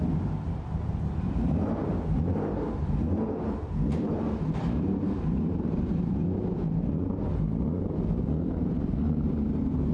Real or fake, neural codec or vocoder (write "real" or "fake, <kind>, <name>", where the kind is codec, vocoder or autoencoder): fake, vocoder, BigVGAN v2